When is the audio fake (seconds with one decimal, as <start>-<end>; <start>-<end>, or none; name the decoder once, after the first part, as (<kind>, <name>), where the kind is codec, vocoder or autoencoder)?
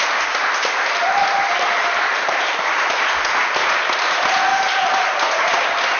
1.2-2.9 (vocoder, BigVGAN v2); 4.5-5.2